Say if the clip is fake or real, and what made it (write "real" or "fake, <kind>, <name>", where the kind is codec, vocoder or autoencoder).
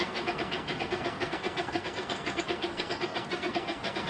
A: fake, codec, SNAC